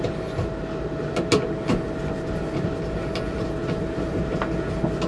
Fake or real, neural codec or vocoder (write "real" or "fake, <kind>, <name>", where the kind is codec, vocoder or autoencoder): real